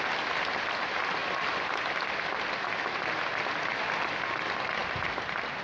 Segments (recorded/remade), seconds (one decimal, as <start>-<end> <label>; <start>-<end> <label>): 0.0-5.6 recorded